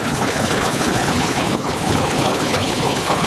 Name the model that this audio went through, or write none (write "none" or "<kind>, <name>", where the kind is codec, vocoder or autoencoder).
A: codec, HILCodec